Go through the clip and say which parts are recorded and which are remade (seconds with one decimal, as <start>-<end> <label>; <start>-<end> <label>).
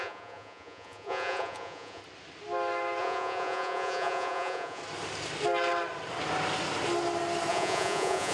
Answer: 0.0-2.0 remade; 2.0-3.0 recorded; 3.0-4.8 remade; 4.8-7.5 recorded; 7.5-8.3 remade